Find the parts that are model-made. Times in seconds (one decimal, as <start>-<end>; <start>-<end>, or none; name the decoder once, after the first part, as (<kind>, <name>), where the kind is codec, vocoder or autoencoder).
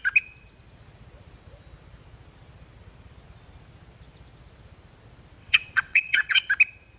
5.4-6.5 (vocoder, WaveNeXt)